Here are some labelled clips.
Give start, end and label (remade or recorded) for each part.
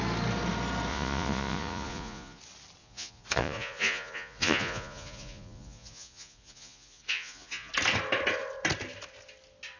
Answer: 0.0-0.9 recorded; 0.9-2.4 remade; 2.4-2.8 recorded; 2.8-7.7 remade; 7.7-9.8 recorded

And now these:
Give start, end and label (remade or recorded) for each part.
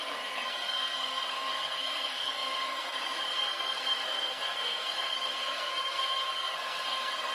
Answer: 0.0-7.3 remade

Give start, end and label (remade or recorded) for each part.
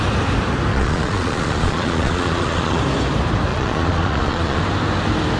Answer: 0.0-0.7 recorded; 0.7-2.8 remade; 2.8-3.5 recorded; 3.5-4.6 remade; 4.6-5.4 recorded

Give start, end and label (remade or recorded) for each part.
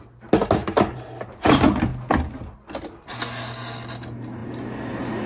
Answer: 0.0-5.3 recorded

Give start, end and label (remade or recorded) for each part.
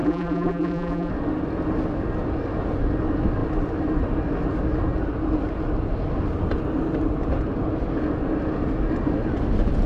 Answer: 0.0-1.1 remade; 1.1-9.9 recorded